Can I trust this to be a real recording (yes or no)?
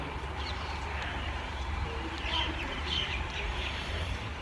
no